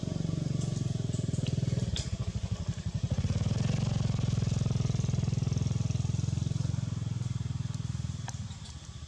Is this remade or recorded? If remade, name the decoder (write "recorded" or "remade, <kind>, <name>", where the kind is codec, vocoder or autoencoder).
recorded